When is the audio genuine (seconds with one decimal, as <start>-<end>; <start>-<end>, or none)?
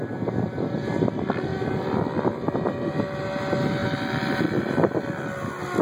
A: 0.0-5.8